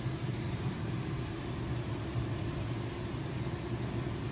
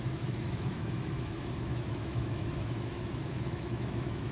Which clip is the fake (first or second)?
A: second